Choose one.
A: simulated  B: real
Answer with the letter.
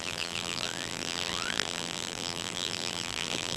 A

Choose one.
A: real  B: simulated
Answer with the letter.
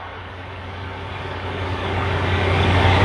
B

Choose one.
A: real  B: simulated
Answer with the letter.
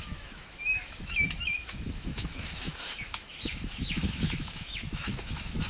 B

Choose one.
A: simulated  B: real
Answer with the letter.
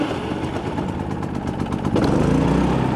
B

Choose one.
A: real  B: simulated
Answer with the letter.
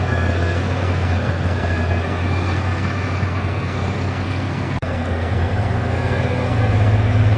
B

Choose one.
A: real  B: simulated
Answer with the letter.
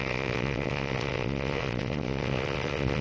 B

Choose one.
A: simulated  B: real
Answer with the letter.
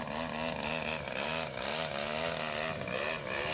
B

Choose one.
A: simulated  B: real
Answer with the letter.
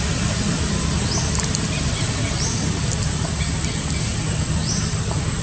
B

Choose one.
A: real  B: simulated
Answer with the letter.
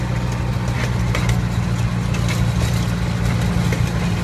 A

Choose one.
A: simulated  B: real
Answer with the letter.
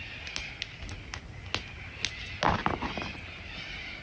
B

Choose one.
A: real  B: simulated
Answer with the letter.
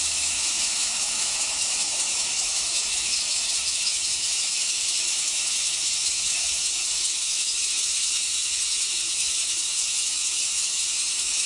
B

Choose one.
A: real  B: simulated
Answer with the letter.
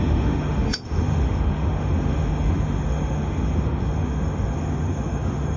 B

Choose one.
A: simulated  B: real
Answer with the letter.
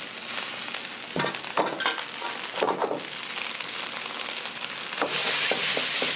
B